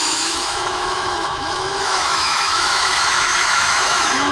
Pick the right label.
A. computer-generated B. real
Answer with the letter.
A